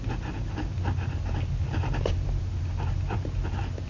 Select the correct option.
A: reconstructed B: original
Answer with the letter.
B